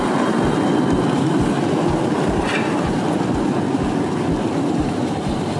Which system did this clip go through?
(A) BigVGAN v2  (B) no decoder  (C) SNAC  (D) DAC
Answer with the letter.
B